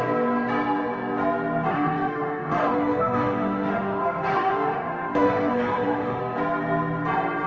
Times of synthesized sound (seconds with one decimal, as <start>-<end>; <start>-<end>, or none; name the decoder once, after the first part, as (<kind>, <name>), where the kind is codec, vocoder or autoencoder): 1.7-6.2 (autoencoder, DAC-VAE)